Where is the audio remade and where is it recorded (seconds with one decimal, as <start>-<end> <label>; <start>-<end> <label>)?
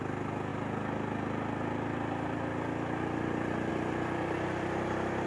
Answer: 0.0-5.3 recorded